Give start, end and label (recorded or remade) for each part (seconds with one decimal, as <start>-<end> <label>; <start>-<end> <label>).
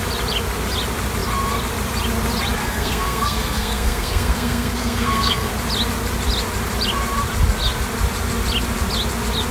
0.0-2.6 recorded; 2.6-5.5 remade; 5.5-9.5 recorded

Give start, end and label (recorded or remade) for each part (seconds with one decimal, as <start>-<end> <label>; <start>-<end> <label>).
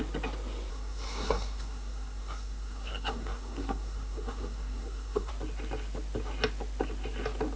0.0-0.7 recorded; 0.7-5.3 remade; 5.3-7.6 recorded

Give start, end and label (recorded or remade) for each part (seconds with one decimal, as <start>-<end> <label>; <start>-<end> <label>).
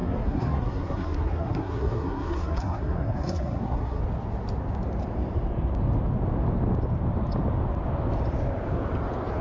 0.0-4.0 remade; 4.0-9.4 recorded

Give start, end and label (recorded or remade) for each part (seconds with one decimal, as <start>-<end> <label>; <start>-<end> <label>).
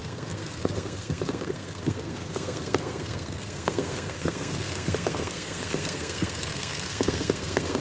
0.0-7.8 remade